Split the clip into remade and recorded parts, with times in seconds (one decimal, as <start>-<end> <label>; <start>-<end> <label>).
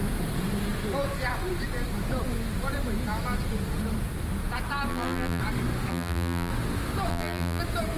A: 0.0-4.9 recorded; 4.9-5.4 remade; 5.4-5.9 recorded; 5.9-6.5 remade; 6.5-7.1 recorded; 7.1-7.6 remade; 7.6-8.0 recorded